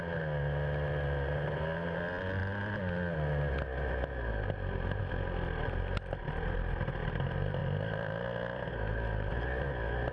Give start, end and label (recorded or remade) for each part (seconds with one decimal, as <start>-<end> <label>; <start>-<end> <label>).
0.0-10.1 recorded